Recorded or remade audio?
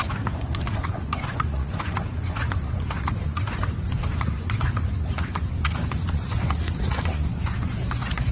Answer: remade